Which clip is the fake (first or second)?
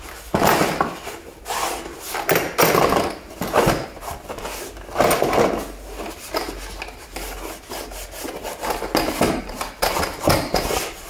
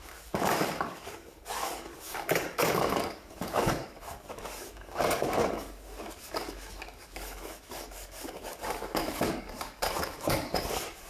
second